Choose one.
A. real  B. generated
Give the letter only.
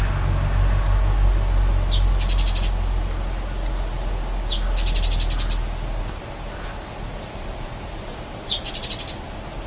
A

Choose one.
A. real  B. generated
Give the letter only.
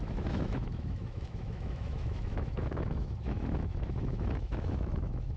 B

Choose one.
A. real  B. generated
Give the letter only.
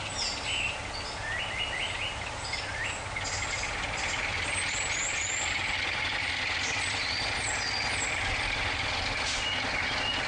A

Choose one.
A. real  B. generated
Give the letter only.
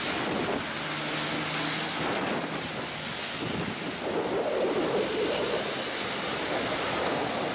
A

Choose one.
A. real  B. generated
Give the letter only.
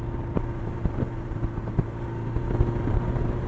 B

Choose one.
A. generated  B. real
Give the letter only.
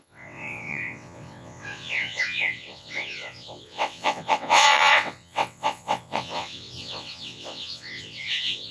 A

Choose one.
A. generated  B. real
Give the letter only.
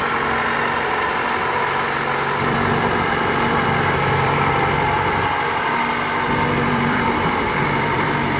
A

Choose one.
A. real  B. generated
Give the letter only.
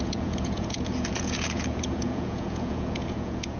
B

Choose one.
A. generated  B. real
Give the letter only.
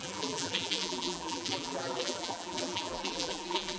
A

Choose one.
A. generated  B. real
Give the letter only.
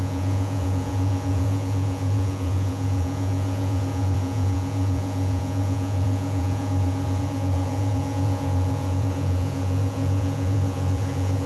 A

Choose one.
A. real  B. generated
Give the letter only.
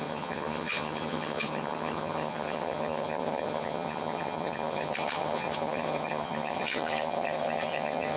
B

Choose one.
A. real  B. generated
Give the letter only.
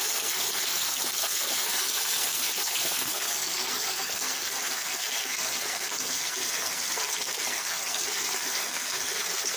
B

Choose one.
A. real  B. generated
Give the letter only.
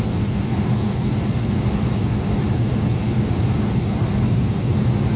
A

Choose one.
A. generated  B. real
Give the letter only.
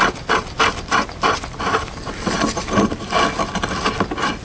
B